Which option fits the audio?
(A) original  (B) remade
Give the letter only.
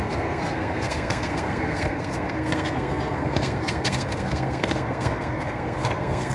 B